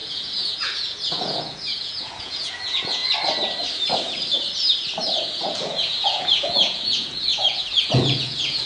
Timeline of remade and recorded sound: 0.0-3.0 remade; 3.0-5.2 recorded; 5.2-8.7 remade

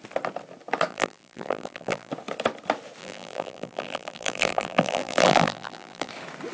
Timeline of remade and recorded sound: 0.0-0.9 recorded; 0.9-2.1 remade; 2.1-3.0 recorded; 3.0-6.1 remade; 6.1-6.5 recorded

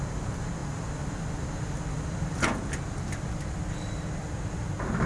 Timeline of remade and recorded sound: 0.0-5.1 recorded

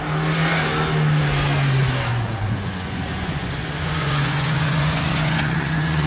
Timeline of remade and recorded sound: 0.0-2.1 recorded; 2.1-6.1 remade

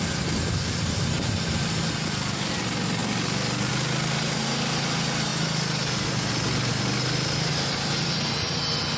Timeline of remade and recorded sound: 0.0-9.0 recorded

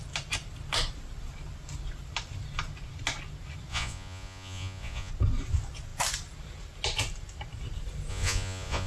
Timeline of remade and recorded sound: 0.0-3.7 recorded; 3.7-5.1 remade; 5.1-8.1 recorded; 8.1-8.9 remade

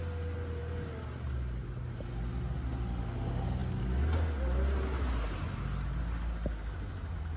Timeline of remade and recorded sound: 0.0-7.4 recorded